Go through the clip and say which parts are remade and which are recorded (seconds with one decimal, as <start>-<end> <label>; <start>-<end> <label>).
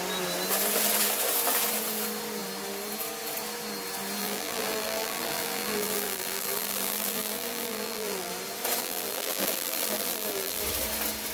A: 0.0-4.2 recorded; 4.2-8.3 remade; 8.3-8.8 recorded; 8.8-10.6 remade; 10.6-11.3 recorded